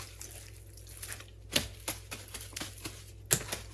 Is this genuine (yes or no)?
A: yes